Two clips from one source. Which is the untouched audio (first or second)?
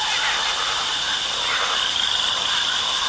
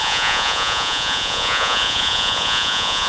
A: first